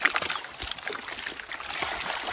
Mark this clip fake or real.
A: real